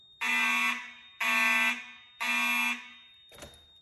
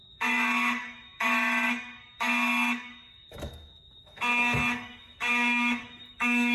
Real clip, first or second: first